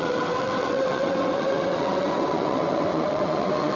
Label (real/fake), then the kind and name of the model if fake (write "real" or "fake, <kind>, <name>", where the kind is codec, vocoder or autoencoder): fake, vocoder, WaveNeXt